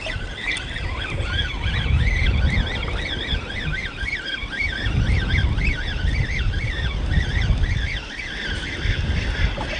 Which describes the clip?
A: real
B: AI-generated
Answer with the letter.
A